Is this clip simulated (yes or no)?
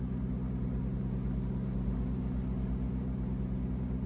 no